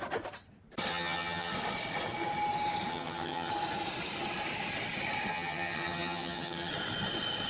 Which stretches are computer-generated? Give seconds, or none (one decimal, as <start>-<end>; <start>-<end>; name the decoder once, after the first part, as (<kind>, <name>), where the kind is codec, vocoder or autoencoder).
0.9-1.5 (vocoder, HiFi-GAN); 2.9-3.5; 5.3-6.7